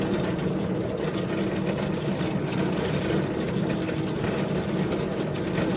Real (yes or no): yes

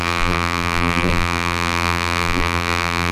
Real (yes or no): no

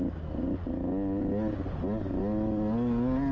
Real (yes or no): yes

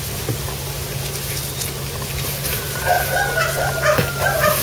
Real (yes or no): yes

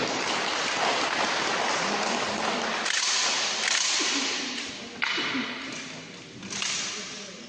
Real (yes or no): yes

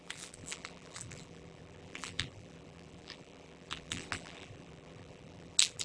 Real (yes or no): no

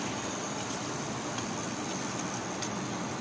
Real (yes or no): no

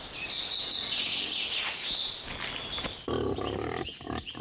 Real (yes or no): yes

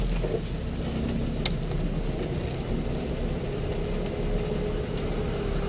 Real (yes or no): yes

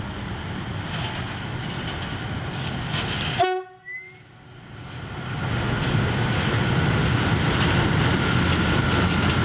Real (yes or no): yes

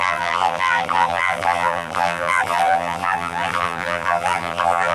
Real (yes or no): no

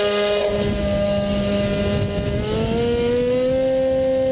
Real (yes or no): yes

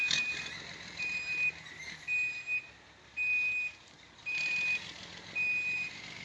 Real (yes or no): no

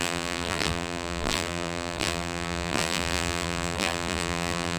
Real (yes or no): no